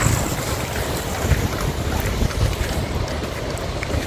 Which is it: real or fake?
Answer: real